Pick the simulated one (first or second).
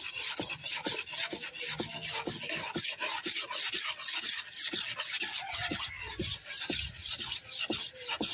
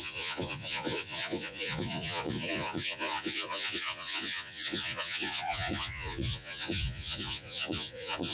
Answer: second